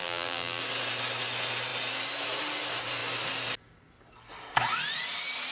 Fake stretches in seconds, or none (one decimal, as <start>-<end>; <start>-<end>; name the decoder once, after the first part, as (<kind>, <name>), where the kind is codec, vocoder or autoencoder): 0.0-0.6 (vocoder, BigVGAN v2)